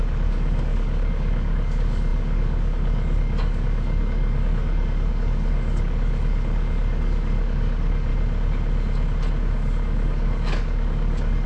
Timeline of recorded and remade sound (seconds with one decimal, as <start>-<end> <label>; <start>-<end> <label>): 0.0-8.1 remade; 8.1-9.4 recorded; 9.4-11.5 remade